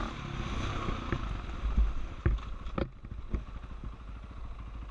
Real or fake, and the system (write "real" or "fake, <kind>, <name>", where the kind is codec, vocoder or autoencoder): real